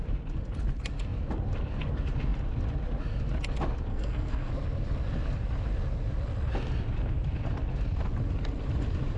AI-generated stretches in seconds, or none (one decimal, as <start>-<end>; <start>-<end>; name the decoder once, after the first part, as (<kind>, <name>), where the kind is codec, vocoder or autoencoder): 3.9-4.5 (codec, SNAC)